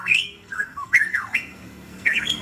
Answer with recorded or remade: remade